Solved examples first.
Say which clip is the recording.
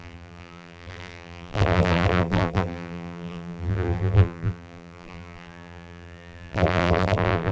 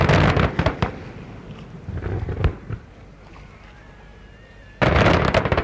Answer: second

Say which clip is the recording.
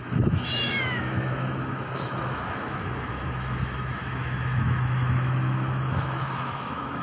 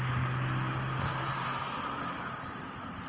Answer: second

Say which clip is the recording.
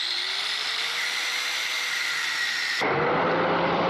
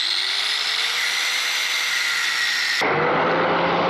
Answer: second